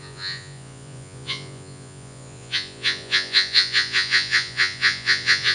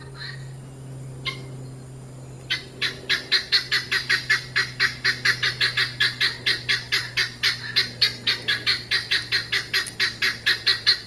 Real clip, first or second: second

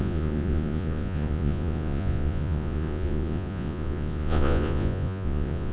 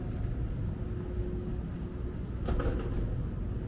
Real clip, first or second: second